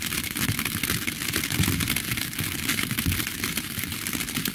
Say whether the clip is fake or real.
real